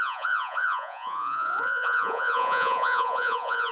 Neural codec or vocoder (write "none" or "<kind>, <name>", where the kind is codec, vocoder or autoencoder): vocoder, Vocos